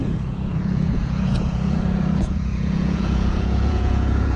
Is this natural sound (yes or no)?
no